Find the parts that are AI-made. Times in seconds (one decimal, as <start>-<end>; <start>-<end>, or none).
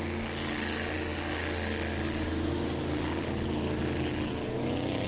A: none